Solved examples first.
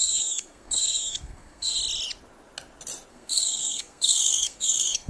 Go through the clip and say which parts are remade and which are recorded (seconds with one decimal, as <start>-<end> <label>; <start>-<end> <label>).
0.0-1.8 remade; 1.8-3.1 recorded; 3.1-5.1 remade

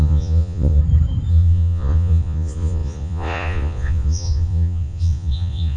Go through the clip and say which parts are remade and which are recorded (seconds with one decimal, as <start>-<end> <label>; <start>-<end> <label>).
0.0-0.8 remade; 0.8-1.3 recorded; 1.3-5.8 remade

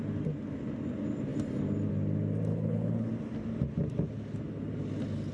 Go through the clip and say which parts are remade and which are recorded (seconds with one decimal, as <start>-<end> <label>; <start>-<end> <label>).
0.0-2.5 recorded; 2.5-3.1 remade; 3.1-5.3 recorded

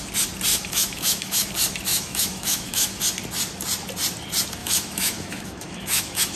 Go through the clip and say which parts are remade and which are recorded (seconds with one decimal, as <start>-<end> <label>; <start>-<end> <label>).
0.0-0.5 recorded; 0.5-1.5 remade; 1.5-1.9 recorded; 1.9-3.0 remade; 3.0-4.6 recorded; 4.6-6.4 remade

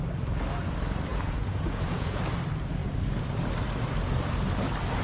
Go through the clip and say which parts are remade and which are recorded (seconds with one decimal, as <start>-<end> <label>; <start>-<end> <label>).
0.0-1.1 recorded; 1.1-2.2 remade; 2.2-5.0 recorded